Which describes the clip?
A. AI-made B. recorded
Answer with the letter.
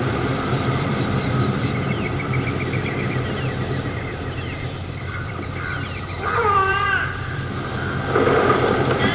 A